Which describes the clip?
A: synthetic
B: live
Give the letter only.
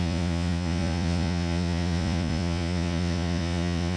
A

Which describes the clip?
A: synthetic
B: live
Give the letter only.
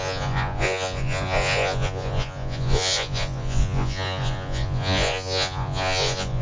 A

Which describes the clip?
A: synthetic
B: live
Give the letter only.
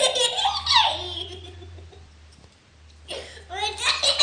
B